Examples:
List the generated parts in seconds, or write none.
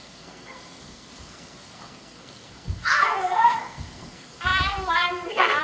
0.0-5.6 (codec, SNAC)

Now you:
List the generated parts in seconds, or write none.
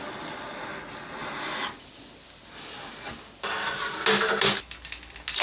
none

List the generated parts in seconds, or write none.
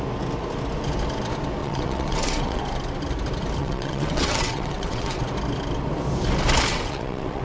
1.6-2.6 (vocoder, WaveNeXt); 3.6-5.2; 6.7-7.4